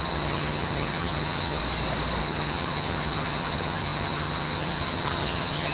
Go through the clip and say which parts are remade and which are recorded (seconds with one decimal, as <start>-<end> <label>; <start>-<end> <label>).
0.0-1.6 remade; 1.6-2.2 recorded; 2.2-5.7 remade